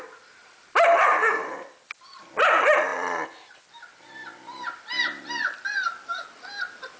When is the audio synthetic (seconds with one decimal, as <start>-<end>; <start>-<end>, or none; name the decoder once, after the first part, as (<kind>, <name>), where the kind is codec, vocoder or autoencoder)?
none